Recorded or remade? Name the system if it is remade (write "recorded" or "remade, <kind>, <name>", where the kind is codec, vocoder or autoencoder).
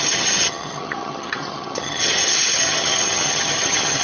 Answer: remade, vocoder, HiFi-GAN